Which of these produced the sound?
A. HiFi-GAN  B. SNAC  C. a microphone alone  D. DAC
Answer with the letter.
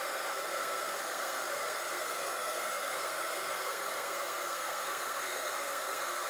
B